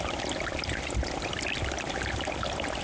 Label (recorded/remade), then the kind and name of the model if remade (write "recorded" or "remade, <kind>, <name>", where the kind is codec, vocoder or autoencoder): recorded